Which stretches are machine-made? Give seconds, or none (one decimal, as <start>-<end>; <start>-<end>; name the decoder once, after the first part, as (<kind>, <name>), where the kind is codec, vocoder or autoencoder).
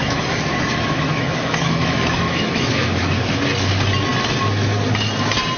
0.0-3.4 (autoencoder, DAC-VAE)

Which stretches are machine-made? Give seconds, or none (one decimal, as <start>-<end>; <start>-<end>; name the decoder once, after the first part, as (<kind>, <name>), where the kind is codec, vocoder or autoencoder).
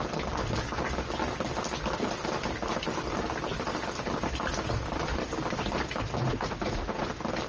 6.2-7.1 (vocoder, Vocos)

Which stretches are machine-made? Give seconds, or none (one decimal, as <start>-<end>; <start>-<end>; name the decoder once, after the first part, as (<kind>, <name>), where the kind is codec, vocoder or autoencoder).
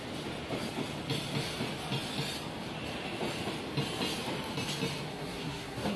5.1-6.0 (codec, SNAC)